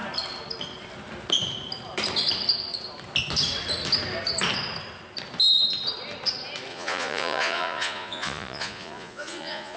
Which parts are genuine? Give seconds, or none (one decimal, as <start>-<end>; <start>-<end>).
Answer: 0.0-6.7